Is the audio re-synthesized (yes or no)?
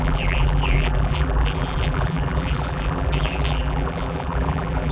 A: yes